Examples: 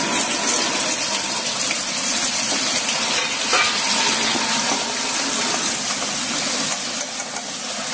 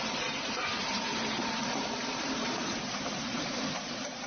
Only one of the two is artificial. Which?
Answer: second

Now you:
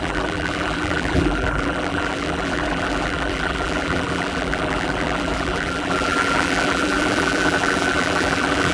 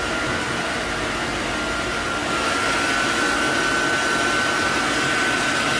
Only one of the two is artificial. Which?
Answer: first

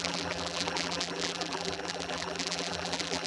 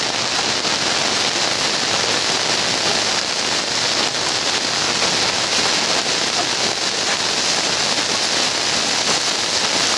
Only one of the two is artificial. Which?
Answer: first